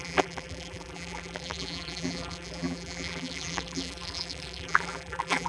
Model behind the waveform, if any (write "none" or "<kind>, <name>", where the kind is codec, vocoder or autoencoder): vocoder, BigVGAN v2